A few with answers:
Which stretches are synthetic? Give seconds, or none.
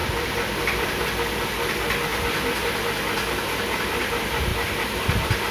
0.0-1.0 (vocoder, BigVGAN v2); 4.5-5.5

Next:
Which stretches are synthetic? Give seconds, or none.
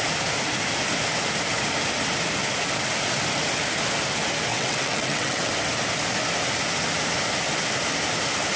4.5-5.5 (vocoder, WaveNeXt)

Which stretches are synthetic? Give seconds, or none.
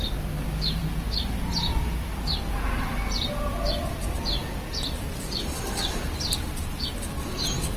none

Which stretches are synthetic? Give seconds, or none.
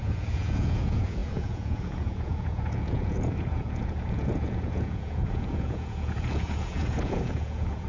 0.0-7.9 (vocoder, Vocos)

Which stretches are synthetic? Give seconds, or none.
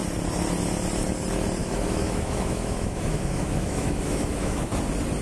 1.6-4.7 (autoencoder, DAC-VAE)